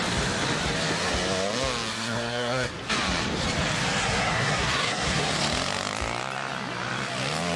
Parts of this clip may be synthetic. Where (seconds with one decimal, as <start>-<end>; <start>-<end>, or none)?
1.9-2.7; 4.0-5.3